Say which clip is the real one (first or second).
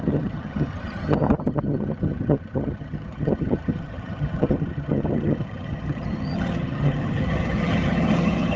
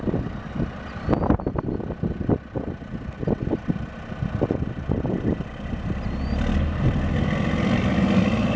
second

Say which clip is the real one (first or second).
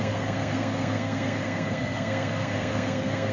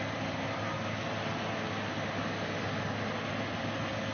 second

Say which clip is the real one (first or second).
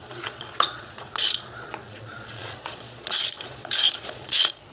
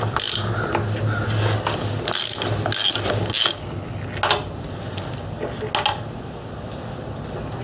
second